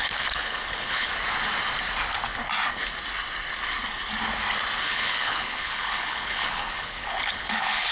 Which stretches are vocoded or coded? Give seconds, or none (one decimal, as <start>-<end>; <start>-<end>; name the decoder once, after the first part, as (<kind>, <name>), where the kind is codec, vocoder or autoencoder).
0.0-1.1 (codec, HILCodec); 4.8-7.9